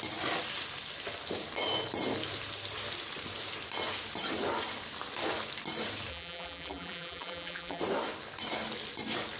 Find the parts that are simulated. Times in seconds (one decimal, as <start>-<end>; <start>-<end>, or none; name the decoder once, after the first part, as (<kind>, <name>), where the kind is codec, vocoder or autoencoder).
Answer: 6.1-7.8 (vocoder, BigVGAN v2)